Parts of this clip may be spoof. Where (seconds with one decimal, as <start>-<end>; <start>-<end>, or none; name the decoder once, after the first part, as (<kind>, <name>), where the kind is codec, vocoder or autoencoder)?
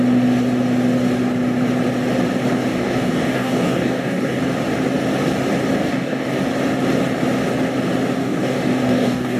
2.7-4.4 (codec, DAC); 5.8-6.4; 8.2-9.4